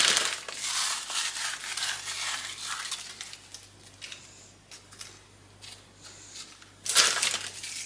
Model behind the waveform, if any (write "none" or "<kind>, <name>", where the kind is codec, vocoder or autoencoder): none